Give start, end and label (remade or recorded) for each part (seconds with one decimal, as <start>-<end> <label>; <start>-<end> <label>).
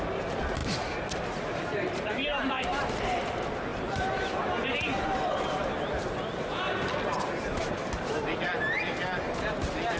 0.0-10.0 recorded